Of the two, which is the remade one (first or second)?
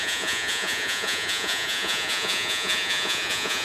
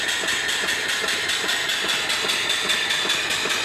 first